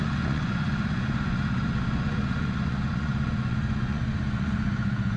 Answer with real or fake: fake